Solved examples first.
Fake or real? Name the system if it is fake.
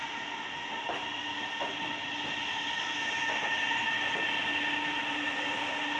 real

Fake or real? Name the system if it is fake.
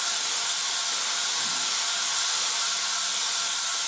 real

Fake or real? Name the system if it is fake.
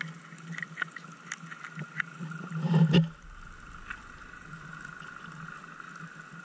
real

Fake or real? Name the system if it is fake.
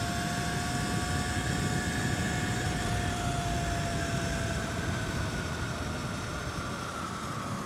real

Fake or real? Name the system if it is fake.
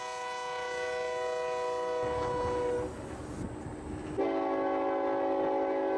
real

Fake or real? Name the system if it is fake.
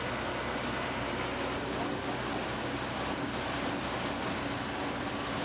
real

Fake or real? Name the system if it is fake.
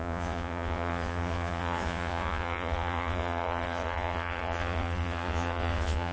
fake, vocoder, Vocos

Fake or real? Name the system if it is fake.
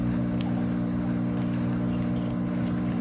real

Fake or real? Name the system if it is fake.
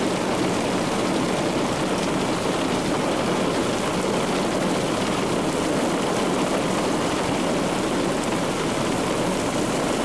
real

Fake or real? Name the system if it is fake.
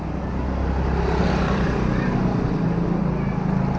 real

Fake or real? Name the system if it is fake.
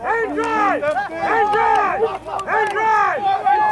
real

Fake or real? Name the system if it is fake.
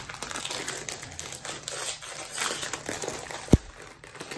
real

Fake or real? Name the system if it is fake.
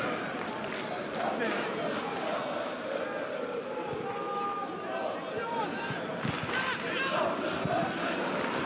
real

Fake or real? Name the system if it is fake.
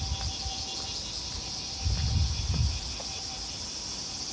real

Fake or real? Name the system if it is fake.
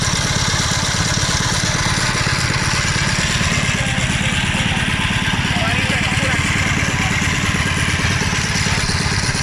real